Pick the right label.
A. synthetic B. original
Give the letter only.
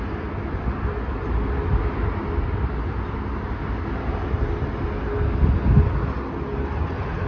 B